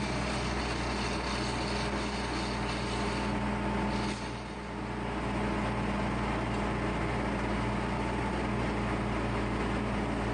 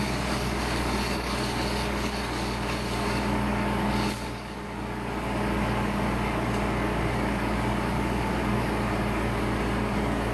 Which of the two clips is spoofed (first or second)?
second